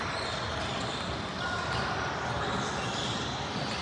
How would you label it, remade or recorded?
recorded